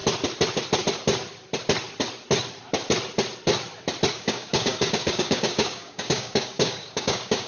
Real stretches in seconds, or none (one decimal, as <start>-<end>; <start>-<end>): 0.0-4.1